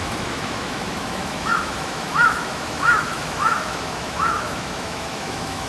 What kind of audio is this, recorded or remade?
remade